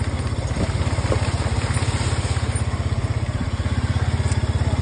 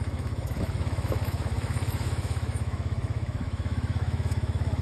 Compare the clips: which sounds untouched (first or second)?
first